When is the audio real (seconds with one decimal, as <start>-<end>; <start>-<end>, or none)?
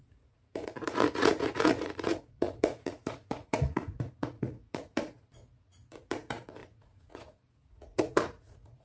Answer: none